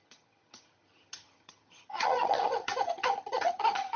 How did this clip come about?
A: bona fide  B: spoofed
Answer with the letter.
B